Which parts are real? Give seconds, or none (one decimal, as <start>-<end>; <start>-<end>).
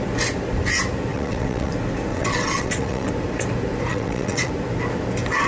0.0-1.1; 1.7-2.1; 3.1-3.9; 4.5-5.5